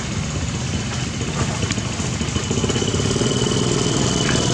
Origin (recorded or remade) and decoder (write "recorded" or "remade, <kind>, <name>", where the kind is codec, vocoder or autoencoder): recorded